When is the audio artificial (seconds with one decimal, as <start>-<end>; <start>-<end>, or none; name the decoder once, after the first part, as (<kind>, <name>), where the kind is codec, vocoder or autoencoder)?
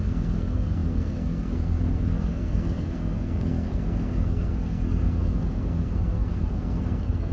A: 0.0-7.3 (codec, SNAC)